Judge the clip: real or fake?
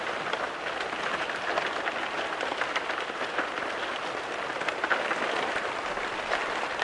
real